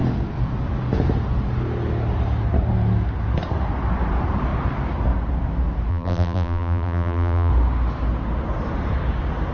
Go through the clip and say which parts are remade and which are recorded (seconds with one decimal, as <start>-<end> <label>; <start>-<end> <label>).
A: 0.0-5.9 recorded; 5.9-7.5 remade; 7.5-9.5 recorded